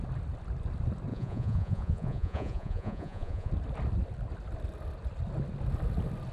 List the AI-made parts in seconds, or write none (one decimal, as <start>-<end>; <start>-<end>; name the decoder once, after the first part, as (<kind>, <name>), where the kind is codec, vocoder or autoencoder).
1.1-3.5 (vocoder, Vocos)